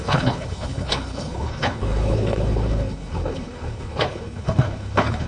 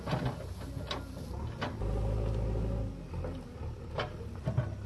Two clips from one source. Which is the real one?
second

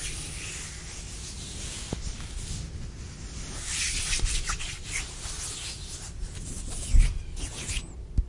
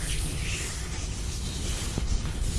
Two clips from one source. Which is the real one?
first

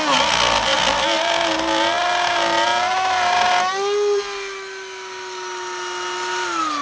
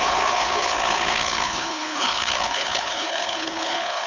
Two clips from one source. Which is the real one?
first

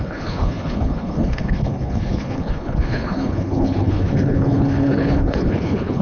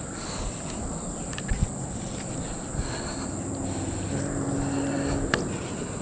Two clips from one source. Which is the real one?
second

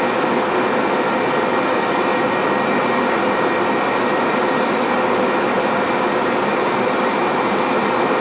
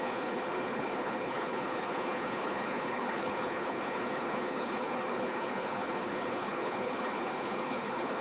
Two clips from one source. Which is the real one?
first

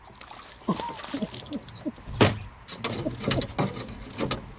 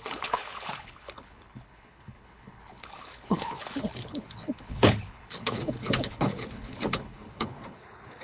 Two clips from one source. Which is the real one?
first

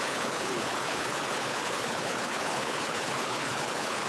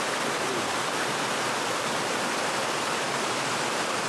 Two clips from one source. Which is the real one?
second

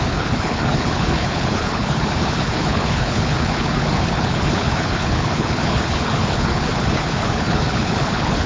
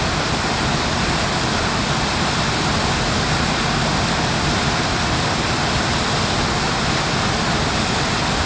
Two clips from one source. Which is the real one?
second